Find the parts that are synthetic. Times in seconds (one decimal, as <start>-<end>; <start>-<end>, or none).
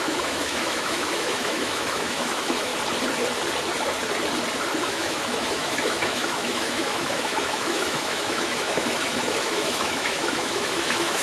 0.0-2.7; 4.8-11.2